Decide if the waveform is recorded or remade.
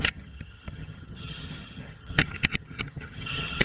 remade